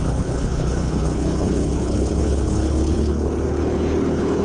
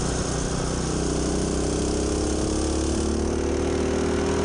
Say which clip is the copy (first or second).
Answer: first